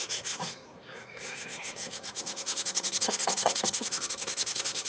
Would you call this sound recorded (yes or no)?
no